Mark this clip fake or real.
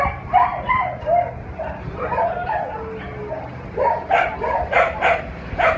real